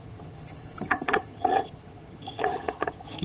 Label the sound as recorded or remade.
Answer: remade